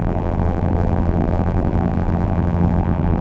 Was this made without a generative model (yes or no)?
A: no